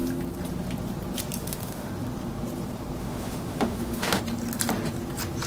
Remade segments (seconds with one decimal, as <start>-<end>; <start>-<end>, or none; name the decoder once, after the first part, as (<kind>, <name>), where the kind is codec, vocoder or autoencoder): 1.4-1.9 (autoencoder, DAC-VAE); 3.0-4.2